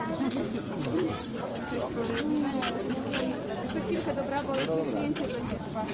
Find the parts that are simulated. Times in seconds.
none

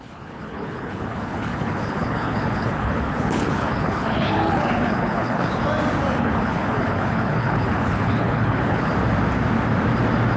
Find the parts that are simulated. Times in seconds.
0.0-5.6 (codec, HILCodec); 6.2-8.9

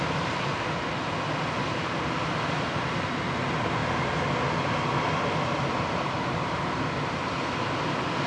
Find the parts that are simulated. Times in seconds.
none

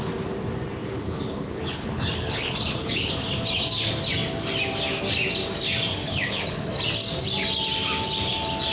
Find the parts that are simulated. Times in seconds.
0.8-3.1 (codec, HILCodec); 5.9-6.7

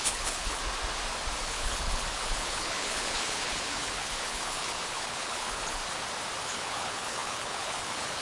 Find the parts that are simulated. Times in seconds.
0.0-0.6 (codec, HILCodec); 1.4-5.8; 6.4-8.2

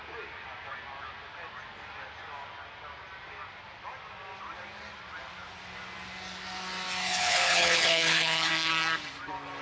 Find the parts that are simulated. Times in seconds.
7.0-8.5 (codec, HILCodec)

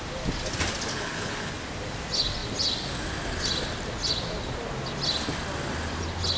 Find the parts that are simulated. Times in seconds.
0.9-1.5 (codec, HILCodec)